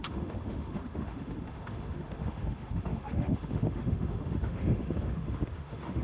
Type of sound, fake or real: fake